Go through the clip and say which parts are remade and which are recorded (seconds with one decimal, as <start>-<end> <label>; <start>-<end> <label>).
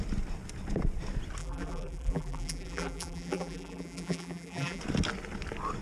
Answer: 0.0-1.4 recorded; 1.4-4.8 remade; 4.8-5.8 recorded